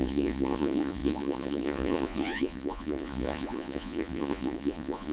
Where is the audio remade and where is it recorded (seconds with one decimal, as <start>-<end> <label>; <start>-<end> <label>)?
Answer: 0.0-5.1 remade